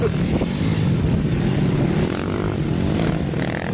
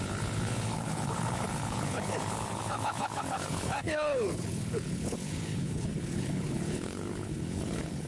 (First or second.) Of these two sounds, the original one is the first